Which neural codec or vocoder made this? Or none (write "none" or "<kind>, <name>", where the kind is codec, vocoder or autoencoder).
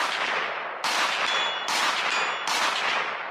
none